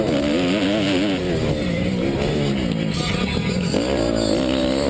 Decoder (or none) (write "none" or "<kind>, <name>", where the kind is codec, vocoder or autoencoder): none